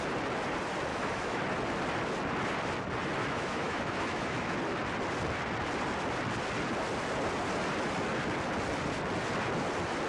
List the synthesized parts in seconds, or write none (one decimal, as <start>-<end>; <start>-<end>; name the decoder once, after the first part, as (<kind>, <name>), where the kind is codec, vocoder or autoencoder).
0.9-1.4 (autoencoder, DAC-VAE); 3.2-4.6